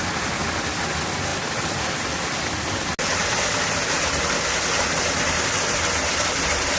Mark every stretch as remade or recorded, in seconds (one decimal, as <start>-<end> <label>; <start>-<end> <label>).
0.0-6.8 recorded